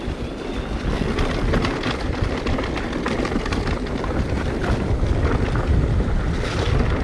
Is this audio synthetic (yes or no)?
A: no